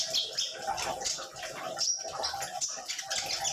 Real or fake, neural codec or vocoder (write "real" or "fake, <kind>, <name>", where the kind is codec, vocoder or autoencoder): real